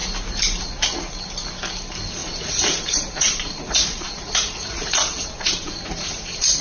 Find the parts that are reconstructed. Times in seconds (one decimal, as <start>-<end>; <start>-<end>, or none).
2.2-6.6